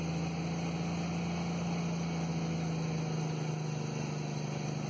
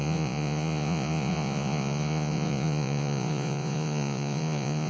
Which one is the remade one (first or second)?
second